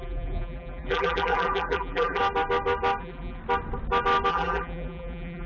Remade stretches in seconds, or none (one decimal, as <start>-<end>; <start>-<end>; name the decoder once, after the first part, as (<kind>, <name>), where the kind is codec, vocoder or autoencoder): 0.0-2.2 (vocoder, BigVGAN v2); 3.0-3.4; 4.3-5.5